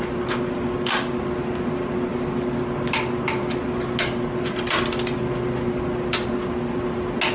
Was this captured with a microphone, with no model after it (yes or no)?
yes